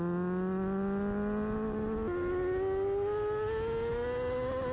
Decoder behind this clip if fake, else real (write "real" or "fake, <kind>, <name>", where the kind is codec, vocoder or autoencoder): real